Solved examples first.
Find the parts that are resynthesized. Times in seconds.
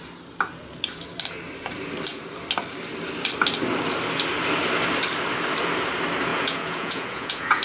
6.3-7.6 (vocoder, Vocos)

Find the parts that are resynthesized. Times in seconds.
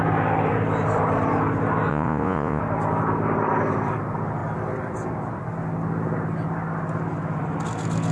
1.9-2.6 (vocoder, Vocos)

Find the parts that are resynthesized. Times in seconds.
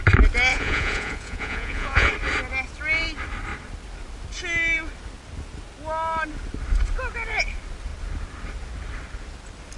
0.5-2.1 (vocoder, Vocos)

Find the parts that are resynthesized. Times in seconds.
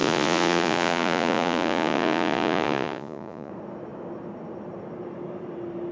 0.0-3.5 (vocoder, Vocos)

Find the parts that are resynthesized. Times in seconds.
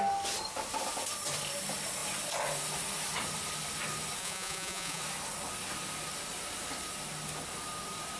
4.2-5.0 (vocoder, Vocos)